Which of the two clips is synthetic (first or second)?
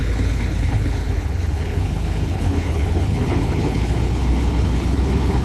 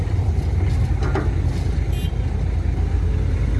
first